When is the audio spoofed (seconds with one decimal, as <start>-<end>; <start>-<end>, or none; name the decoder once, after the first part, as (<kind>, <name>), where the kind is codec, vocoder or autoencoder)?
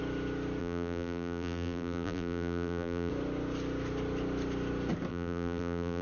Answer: 0.6-3.1 (vocoder, BigVGAN v2); 5.1-6.0